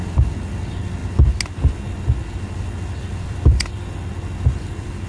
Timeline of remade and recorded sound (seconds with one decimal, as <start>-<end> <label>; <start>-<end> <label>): 0.0-5.1 recorded